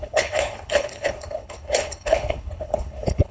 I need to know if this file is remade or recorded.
remade